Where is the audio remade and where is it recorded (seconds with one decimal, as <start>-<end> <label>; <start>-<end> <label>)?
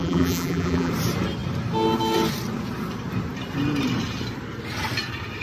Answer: 0.0-0.9 remade; 0.9-5.4 recorded